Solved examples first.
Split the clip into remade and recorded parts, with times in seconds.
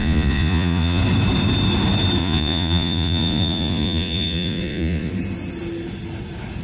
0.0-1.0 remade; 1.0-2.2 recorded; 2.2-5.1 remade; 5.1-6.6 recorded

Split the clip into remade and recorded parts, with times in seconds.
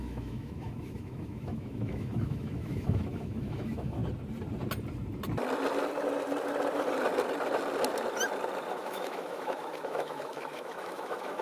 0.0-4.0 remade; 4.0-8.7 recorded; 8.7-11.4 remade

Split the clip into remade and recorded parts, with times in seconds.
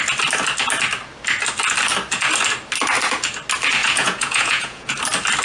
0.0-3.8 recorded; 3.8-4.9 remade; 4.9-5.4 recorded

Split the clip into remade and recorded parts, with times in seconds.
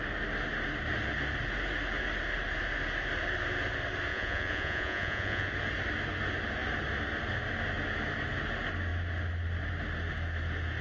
0.0-4.1 recorded; 4.1-5.5 remade; 5.5-10.8 recorded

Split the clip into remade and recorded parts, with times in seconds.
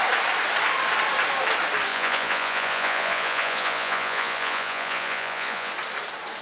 0.0-1.9 recorded; 1.9-5.7 remade; 5.7-6.4 recorded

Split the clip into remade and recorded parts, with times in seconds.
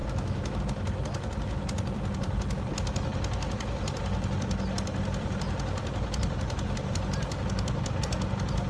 0.0-0.6 remade; 0.6-8.7 recorded